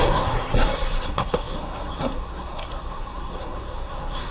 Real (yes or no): no